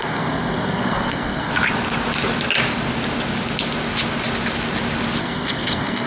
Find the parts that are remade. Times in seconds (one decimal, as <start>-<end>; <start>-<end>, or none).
0.0-1.5; 5.2-6.1